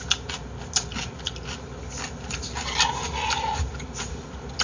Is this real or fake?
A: real